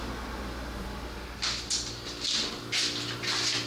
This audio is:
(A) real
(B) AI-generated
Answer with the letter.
A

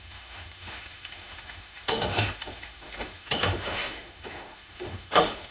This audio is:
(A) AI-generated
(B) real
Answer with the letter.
A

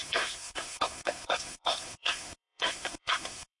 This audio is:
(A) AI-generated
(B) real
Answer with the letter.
A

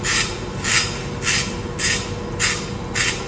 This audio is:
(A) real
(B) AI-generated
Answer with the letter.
A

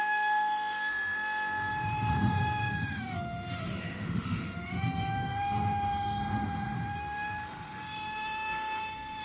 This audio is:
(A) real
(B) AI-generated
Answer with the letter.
B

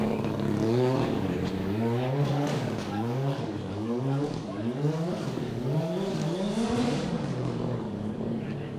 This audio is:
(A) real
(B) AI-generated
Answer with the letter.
B